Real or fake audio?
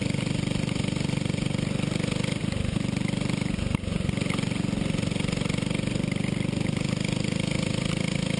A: real